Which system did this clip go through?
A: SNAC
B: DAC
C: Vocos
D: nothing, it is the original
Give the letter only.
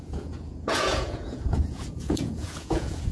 C